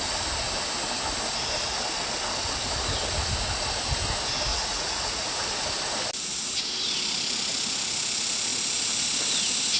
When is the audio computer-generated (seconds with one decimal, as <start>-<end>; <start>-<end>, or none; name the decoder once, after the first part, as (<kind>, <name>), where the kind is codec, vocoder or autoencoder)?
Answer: 4.5-5.6 (vocoder, Vocos)